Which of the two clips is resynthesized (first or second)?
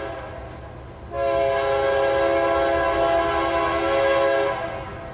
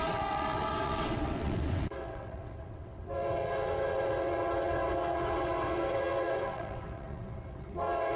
second